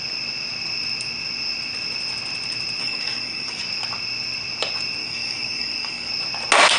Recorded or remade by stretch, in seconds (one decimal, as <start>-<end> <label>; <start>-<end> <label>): 0.0-2.8 recorded; 2.8-3.6 remade; 3.6-5.0 recorded; 5.0-6.1 remade; 6.1-6.8 recorded